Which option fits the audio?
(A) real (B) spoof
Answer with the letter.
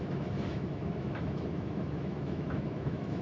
B